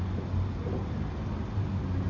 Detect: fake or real real